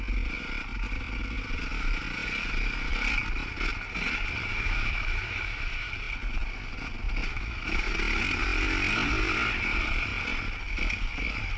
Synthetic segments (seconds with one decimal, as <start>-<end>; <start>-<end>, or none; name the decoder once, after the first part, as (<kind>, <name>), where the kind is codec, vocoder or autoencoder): 4.5-5.9 (autoencoder, DAC-VAE); 7.3-7.9